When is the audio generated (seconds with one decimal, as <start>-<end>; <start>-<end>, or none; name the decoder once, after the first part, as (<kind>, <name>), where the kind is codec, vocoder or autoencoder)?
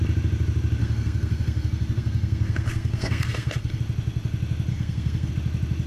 0.8-3.8 (codec, SNAC); 4.7-5.3